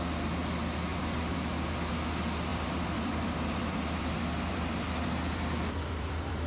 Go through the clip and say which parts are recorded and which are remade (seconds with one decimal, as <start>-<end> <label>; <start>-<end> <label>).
0.0-0.9 recorded; 0.9-1.7 remade; 1.7-2.5 recorded; 2.5-6.5 remade